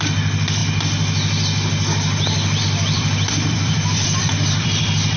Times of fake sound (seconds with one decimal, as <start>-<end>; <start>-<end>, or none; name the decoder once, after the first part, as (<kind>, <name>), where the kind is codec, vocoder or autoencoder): 0.0-0.6 (vocoder, BigVGAN v2); 2.6-5.2